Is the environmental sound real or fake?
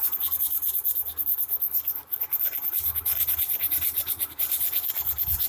real